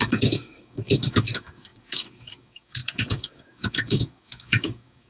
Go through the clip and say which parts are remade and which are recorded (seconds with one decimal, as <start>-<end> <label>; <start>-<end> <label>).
0.0-5.1 remade